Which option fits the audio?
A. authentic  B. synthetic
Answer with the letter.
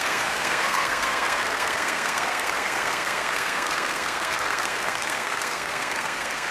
B